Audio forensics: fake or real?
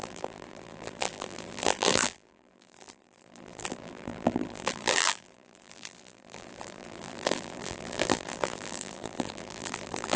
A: fake